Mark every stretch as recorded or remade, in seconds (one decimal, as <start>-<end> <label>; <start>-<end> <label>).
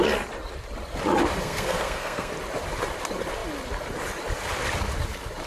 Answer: 0.0-1.4 recorded; 1.4-2.3 remade; 2.3-5.5 recorded